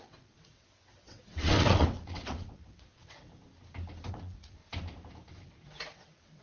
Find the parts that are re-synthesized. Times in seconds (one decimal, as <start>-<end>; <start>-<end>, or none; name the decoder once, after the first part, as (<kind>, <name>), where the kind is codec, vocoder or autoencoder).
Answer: 0.0-3.3 (vocoder, WaveNeXt); 4.1-4.6; 5.3-6.4